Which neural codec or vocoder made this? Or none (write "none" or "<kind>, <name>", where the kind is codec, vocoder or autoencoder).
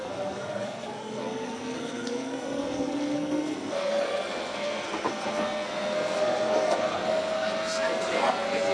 codec, SNAC